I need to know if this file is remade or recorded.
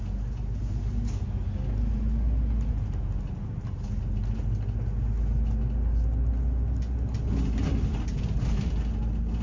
recorded